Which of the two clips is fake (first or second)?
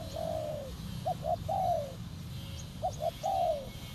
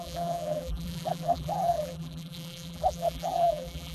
second